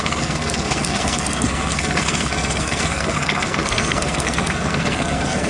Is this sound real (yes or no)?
no